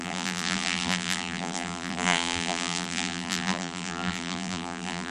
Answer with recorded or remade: remade